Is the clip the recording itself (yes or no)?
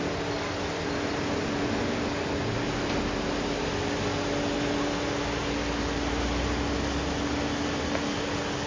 yes